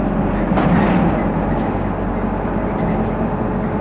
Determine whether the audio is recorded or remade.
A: recorded